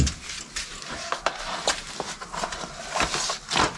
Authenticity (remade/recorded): recorded